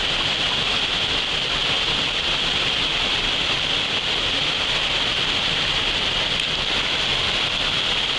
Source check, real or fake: real